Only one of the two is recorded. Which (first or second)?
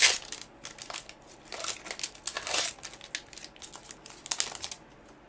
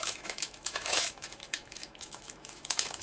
first